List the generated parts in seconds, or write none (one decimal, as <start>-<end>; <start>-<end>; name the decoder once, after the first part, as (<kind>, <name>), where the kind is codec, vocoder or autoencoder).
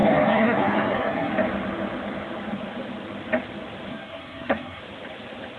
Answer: 0.0-1.3 (codec, SNAC); 3.9-4.8